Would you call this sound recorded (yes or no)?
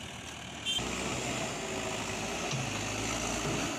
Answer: yes